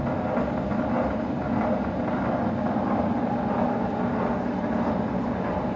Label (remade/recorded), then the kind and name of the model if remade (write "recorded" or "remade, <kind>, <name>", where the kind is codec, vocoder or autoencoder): recorded